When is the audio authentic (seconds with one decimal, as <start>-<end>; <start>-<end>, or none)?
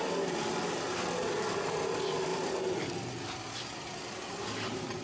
0.0-2.3; 3.1-5.0